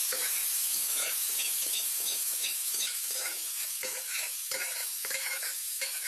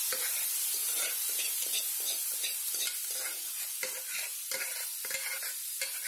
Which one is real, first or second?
second